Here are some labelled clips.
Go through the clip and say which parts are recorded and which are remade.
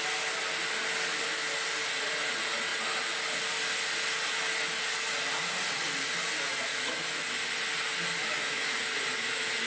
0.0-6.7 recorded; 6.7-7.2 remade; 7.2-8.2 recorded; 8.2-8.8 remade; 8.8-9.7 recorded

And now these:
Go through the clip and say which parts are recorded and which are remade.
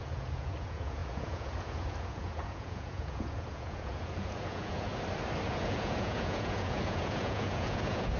0.0-4.9 remade; 4.9-5.5 recorded; 5.5-8.2 remade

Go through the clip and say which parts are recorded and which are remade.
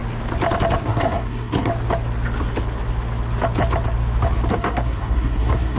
0.0-0.8 recorded; 0.8-1.7 remade; 1.7-4.5 recorded; 4.5-5.8 remade